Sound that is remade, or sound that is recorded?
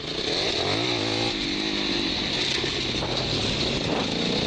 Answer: recorded